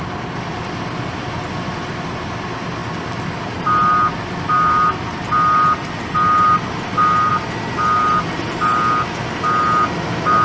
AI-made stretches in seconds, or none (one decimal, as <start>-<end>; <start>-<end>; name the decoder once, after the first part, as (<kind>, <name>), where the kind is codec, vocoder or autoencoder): none